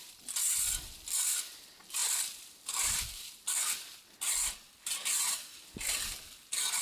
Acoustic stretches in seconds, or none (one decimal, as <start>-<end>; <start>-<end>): 0.0-2.0; 3.7-5.0; 6.1-6.8